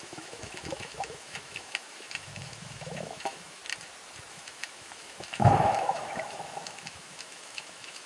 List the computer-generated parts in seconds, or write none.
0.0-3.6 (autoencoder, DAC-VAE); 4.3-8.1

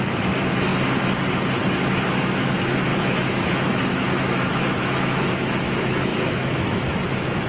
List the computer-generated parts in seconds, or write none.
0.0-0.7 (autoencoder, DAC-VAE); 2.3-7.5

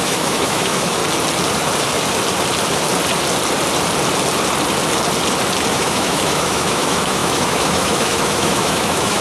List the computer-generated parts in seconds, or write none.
0.0-1.0 (autoencoder, DAC-VAE); 5.7-9.2

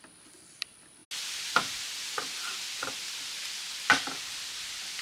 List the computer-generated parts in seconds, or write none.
none